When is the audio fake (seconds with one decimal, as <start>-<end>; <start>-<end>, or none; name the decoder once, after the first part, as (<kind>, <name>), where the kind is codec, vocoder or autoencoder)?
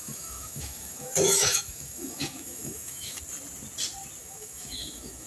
0.0-3.2 (autoencoder, DAC-VAE); 4.2-5.3